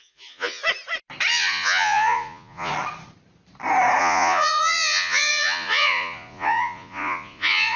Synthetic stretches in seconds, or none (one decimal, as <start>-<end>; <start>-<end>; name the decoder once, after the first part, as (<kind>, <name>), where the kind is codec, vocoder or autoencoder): 0.0-0.6 (vocoder, Vocos); 1.3-2.7; 4.0-7.8